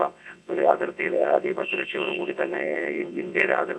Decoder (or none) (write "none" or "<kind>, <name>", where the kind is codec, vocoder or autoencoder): vocoder, WaveNeXt